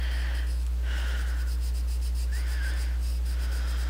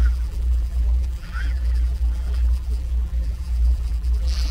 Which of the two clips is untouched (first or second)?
first